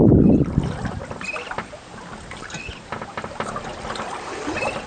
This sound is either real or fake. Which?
real